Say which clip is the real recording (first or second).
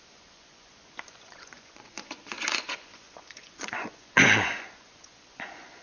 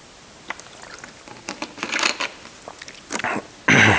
second